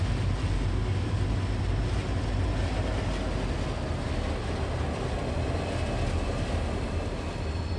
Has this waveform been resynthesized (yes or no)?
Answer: no